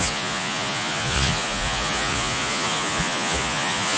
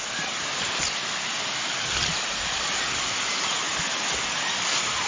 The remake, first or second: first